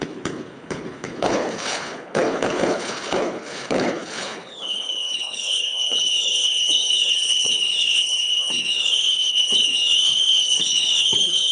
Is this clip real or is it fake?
fake